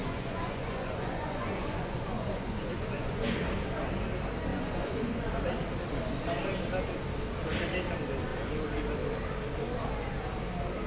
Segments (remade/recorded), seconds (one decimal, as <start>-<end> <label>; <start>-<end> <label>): 0.0-3.4 remade; 3.4-4.5 recorded; 4.5-5.3 remade; 5.3-10.9 recorded